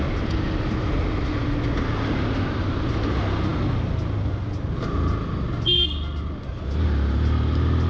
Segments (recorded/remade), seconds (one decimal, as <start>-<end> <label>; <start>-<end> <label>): 0.0-7.9 recorded

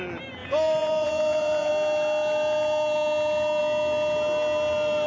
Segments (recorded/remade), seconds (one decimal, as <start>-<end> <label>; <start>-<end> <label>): 0.0-0.4 recorded; 0.4-1.7 remade; 1.7-5.1 recorded